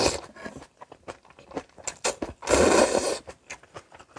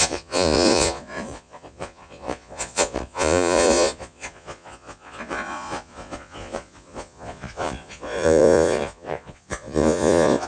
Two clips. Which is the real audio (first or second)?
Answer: first